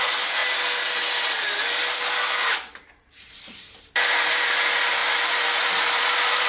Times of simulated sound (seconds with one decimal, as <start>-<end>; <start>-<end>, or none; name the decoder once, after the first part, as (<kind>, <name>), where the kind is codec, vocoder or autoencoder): 0.0-0.4 (vocoder, BigVGAN v2); 3.8-5.0; 5.6-6.5